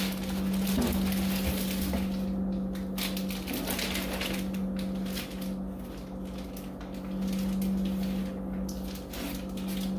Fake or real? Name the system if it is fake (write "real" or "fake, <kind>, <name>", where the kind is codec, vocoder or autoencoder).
real